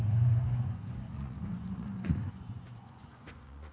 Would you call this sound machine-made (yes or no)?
yes